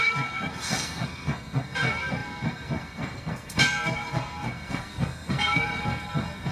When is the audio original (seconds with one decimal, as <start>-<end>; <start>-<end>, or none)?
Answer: none